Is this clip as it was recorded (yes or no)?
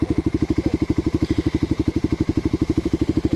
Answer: no